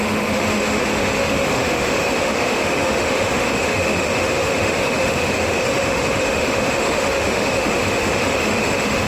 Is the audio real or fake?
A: fake